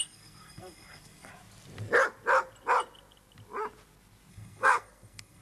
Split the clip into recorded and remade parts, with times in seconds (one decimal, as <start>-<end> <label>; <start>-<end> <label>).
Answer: 0.0-1.3 remade; 1.3-4.3 recorded; 4.3-5.4 remade